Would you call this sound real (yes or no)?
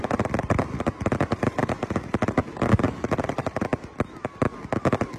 yes